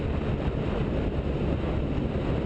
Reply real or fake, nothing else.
real